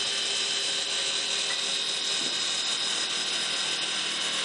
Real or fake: real